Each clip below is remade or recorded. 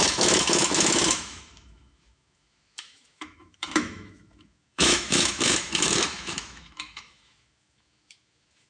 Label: remade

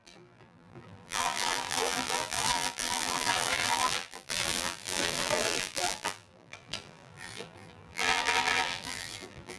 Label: remade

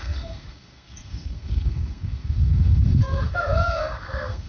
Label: remade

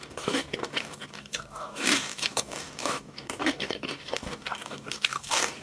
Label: remade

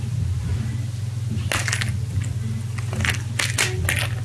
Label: recorded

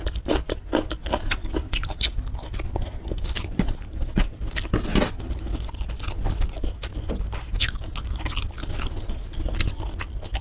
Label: recorded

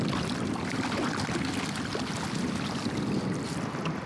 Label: recorded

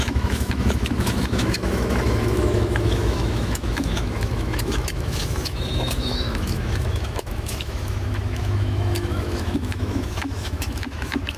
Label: remade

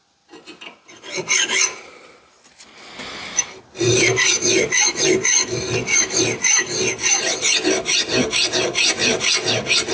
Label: recorded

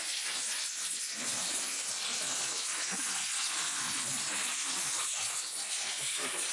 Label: recorded